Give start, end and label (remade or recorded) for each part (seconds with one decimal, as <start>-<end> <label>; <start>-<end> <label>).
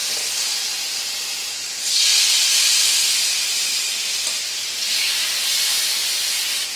0.0-6.8 recorded